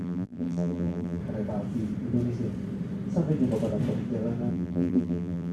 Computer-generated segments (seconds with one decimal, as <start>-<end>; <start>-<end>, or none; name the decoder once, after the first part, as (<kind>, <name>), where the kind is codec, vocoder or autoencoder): 0.0-1.2 (vocoder, BigVGAN v2); 4.5-5.5